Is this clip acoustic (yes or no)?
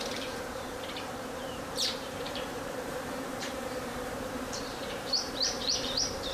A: no